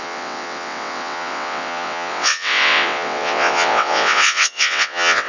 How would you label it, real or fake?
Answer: fake